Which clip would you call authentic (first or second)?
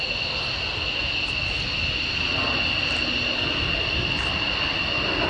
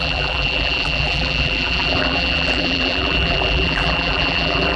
first